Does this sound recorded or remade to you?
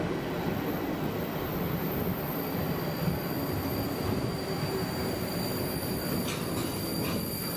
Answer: recorded